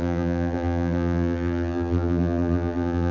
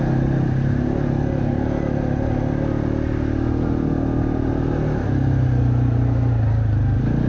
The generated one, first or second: first